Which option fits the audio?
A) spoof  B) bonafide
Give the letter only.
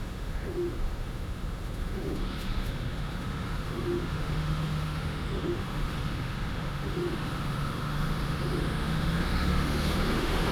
A